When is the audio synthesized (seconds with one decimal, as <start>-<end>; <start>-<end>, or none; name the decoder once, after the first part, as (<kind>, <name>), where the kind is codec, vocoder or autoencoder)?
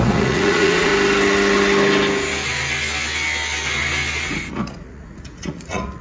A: 0.0-0.9 (vocoder, Vocos); 4.5-6.0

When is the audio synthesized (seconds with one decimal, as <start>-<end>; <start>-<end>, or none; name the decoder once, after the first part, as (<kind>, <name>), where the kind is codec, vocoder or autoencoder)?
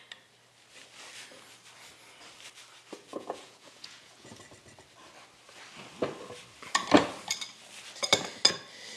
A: 3.1-4.4 (vocoder, Vocos)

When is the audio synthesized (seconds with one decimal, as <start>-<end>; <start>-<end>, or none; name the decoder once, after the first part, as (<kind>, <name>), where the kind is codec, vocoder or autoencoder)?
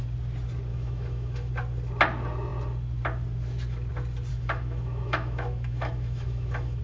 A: 0.7-1.5 (autoencoder, DAC-VAE); 4.3-6.8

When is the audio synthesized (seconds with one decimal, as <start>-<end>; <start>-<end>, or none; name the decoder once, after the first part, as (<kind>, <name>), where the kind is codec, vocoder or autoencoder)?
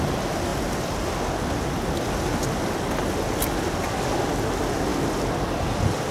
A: none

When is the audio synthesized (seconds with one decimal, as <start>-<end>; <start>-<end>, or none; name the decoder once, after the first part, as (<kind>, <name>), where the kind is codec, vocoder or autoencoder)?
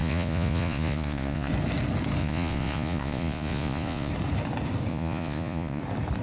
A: 0.0-1.5 (vocoder, Vocos); 2.2-4.1; 4.9-5.8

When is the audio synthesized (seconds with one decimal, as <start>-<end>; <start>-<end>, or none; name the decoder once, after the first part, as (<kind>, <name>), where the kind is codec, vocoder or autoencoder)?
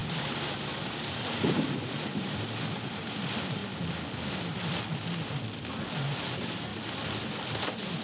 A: 0.0-3.6 (vocoder, BigVGAN v2); 6.2-6.7; 7.6-8.0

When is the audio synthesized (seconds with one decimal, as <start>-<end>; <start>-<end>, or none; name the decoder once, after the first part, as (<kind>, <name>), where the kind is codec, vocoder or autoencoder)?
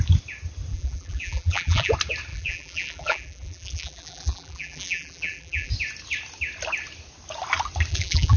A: 0.7-1.9 (vocoder, BigVGAN v2); 2.3-5.7; 7.9-8.4